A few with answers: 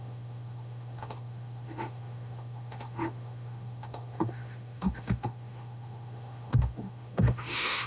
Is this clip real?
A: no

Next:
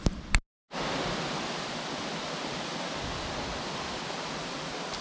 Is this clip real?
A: yes